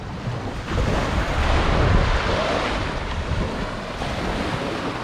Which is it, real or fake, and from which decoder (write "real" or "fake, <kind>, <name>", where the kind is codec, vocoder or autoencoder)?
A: fake, vocoder, BigVGAN v2